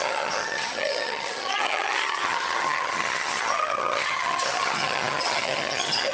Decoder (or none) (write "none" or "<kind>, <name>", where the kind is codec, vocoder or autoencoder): vocoder, HiFi-GAN